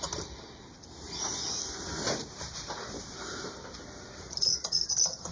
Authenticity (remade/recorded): recorded